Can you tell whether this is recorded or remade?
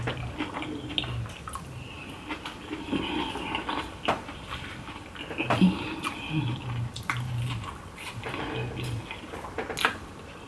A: recorded